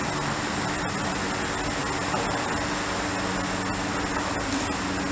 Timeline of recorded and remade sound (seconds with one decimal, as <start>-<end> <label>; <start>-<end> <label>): 0.0-5.1 recorded